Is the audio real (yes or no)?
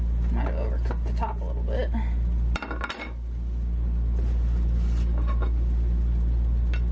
yes